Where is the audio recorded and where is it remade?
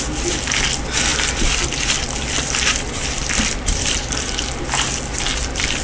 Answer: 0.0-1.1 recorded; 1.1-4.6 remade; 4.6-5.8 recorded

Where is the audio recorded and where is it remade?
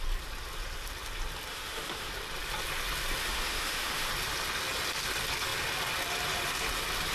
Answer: 0.0-1.5 recorded; 1.5-2.1 remade; 2.1-3.2 recorded; 3.2-4.1 remade; 4.1-7.1 recorded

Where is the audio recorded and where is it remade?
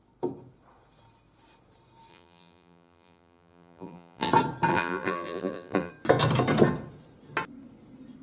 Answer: 0.0-2.1 recorded; 2.1-4.3 remade; 4.3-4.7 recorded; 4.7-5.9 remade; 5.9-8.2 recorded